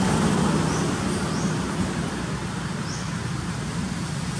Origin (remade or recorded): recorded